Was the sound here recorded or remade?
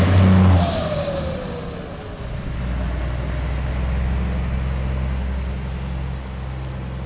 recorded